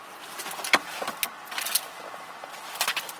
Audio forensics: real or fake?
real